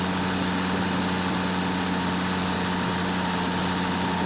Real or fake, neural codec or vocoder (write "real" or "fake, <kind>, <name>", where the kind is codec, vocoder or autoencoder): real